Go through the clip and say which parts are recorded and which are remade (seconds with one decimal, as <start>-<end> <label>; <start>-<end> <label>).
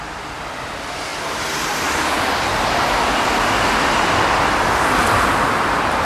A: 0.0-6.0 recorded